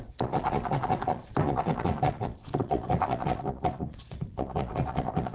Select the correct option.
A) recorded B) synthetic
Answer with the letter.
B